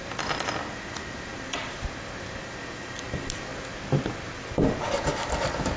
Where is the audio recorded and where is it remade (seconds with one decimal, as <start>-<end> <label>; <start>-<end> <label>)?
0.0-5.8 recorded